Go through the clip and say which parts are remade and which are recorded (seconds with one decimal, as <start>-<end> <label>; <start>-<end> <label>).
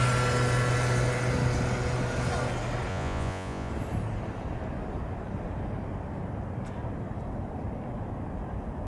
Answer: 0.0-2.9 recorded; 2.9-3.7 remade; 3.7-8.9 recorded